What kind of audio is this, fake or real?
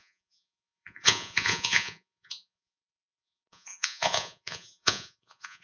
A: fake